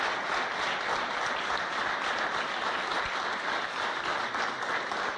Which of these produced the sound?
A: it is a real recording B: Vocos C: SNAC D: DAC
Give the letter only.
A